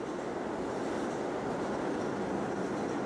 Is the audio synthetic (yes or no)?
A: no